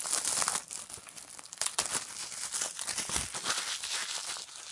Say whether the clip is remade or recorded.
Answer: recorded